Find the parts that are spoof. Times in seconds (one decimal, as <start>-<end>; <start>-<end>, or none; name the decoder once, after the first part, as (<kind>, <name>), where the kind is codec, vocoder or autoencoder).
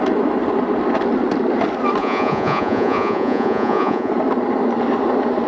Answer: 2.0-4.1 (vocoder, Vocos)